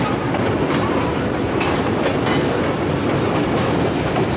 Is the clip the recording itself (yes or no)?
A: yes